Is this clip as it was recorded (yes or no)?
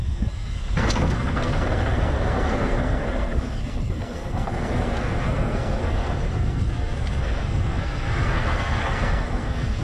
no